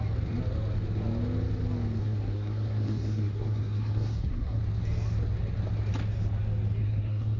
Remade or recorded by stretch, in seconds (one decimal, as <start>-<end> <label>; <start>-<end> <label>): 0.0-2.0 recorded; 2.0-4.6 remade; 4.6-6.8 recorded; 6.8-7.4 remade